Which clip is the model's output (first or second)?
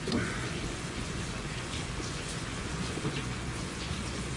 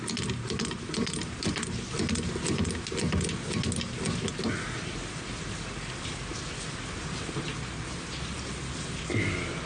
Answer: first